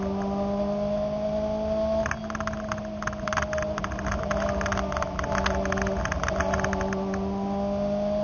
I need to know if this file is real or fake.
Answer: real